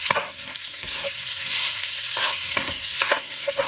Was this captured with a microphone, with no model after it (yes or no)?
no